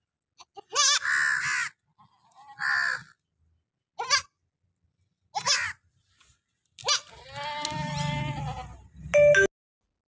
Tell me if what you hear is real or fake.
real